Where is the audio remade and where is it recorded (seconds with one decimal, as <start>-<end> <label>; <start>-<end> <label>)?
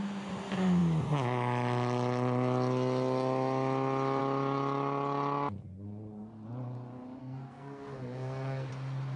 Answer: 0.0-7.2 recorded; 7.2-8.7 remade; 8.7-9.2 recorded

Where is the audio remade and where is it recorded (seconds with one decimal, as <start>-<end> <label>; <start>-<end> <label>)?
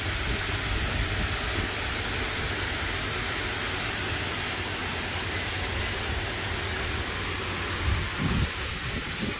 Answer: 0.0-4.8 recorded; 4.8-5.5 remade; 5.5-9.4 recorded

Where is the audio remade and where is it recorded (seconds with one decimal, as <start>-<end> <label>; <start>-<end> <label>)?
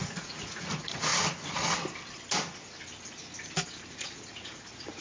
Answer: 0.0-1.1 remade; 1.1-3.9 recorded; 3.9-5.0 remade